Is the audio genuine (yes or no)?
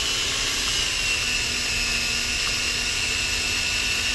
yes